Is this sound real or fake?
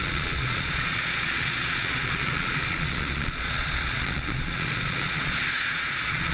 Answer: fake